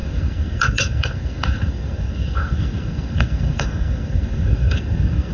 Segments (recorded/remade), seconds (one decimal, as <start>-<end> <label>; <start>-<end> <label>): 0.0-5.3 remade